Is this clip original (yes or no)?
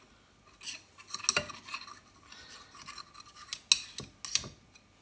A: yes